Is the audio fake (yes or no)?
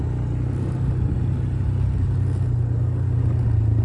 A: no